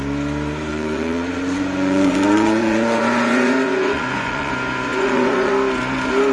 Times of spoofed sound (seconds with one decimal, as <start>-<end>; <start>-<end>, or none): 0.7-4.5; 4.9-5.5